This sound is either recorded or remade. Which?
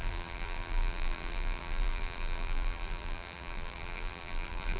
remade